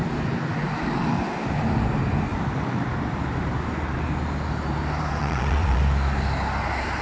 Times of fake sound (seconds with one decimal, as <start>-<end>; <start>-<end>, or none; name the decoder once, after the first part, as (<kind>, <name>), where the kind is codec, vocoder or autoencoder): 5.2-5.8 (vocoder, Vocos)